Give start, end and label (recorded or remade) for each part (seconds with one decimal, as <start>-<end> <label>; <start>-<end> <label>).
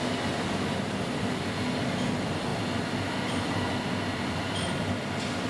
0.0-5.5 recorded